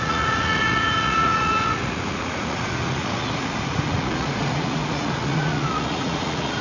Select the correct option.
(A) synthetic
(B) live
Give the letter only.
A